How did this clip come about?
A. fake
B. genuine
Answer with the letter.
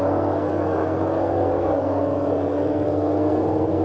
A